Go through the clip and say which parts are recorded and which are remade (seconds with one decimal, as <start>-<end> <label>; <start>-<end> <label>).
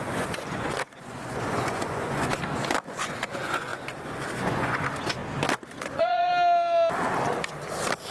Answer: 0.0-2.3 remade; 2.3-2.9 recorded; 2.9-5.2 remade; 5.2-5.8 recorded; 5.8-6.3 remade; 6.3-8.1 recorded